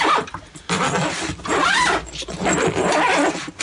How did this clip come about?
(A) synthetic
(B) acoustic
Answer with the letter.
B